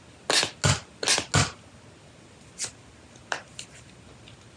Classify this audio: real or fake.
real